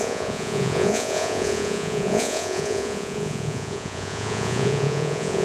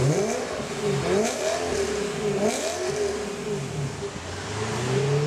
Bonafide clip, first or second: second